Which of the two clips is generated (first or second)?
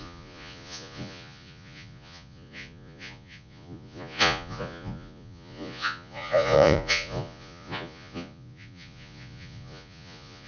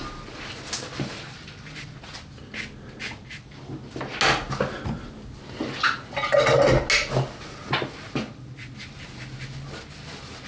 first